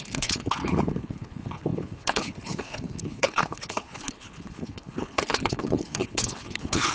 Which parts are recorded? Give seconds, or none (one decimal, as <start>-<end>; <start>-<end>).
none